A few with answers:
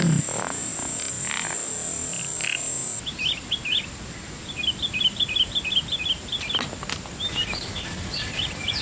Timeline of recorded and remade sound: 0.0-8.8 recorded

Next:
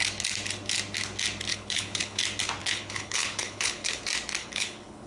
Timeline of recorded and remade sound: 0.0-1.5 recorded; 1.5-2.2 remade; 2.2-2.6 recorded; 2.6-4.0 remade; 4.0-4.4 recorded; 4.4-5.1 remade

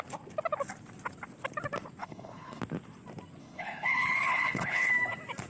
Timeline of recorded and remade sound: 0.0-2.0 recorded; 2.0-2.6 remade; 2.6-3.4 recorded; 3.4-4.9 remade; 4.9-5.5 recorded

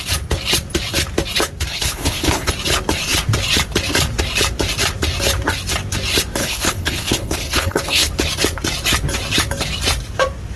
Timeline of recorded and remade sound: 0.0-1.7 recorded; 1.7-2.5 remade; 2.5-6.4 recorded; 6.4-8.1 remade; 8.1-10.6 recorded